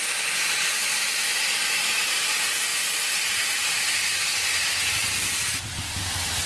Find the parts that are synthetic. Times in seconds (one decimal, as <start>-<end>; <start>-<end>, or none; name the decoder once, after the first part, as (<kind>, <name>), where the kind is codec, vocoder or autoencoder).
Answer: none